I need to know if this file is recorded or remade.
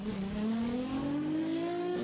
remade